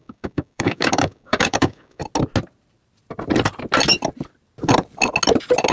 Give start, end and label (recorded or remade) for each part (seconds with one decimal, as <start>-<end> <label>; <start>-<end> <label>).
0.0-2.0 remade; 2.0-5.7 recorded